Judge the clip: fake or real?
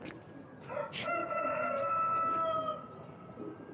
real